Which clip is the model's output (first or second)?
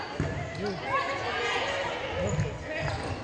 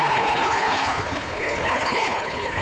second